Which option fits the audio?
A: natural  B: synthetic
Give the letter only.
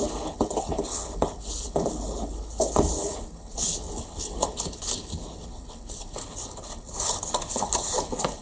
B